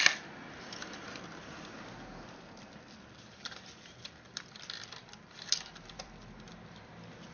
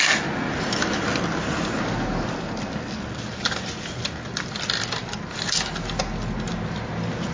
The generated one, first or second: first